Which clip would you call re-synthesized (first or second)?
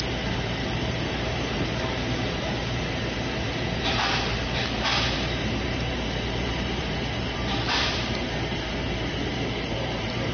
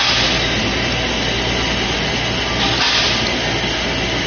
first